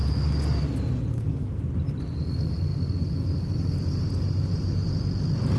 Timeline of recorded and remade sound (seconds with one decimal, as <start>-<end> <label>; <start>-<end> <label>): 0.0-1.1 recorded; 1.1-1.6 remade; 1.6-5.6 recorded